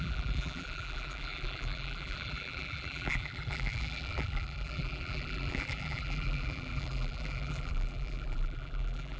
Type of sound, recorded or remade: remade